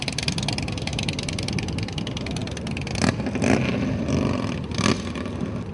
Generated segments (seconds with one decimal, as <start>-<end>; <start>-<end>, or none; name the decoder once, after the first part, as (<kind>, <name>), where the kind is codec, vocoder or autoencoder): 0.9-2.0 (vocoder, BigVGAN v2)